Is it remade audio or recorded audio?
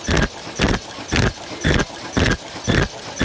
recorded